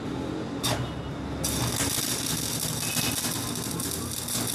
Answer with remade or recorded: recorded